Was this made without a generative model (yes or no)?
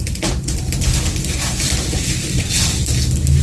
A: yes